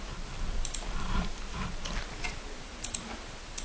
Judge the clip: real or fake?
real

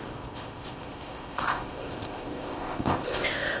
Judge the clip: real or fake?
fake